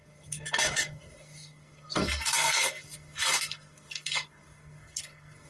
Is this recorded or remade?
remade